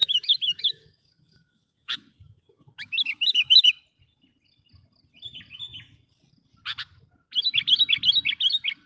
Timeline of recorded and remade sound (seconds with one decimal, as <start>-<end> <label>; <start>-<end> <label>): 0.0-3.7 remade; 3.7-8.9 recorded